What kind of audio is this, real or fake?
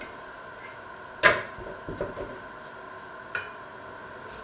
real